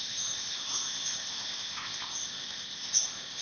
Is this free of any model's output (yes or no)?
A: no